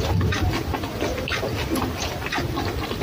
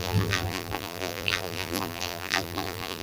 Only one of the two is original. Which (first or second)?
first